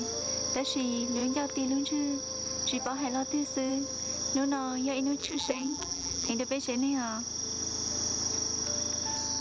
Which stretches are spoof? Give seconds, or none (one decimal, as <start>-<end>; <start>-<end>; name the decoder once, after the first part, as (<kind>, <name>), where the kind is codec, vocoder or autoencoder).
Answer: 5.2-6.3 (vocoder, BigVGAN v2)